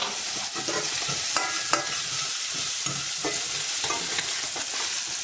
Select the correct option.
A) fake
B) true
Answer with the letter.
B